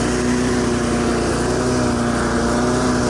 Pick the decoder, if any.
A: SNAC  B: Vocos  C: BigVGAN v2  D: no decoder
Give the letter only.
D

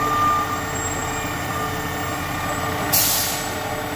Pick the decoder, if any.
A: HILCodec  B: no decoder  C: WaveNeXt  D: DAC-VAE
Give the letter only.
B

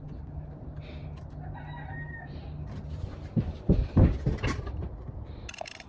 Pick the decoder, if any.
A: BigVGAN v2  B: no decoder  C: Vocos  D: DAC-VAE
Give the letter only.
B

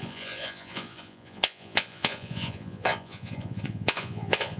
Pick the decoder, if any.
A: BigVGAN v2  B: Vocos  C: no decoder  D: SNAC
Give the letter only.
B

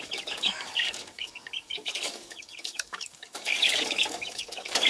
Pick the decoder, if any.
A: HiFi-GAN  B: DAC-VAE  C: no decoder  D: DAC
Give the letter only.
D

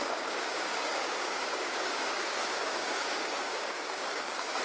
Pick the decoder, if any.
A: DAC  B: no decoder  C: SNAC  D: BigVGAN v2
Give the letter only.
A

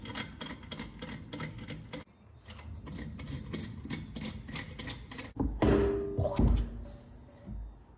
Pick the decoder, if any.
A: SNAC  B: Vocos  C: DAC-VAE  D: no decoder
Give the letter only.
D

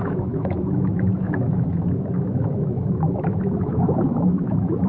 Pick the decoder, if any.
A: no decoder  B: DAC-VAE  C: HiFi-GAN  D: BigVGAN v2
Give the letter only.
B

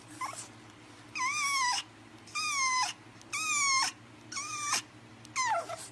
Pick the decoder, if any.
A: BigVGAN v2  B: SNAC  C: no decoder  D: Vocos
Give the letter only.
C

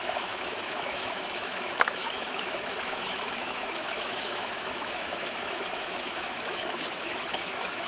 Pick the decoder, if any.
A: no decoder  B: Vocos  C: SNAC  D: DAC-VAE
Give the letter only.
D